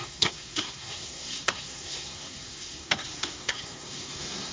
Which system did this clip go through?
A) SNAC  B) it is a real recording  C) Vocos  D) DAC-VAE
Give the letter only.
A